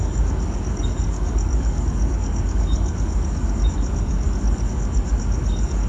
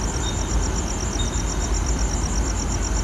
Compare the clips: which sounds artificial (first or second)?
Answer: first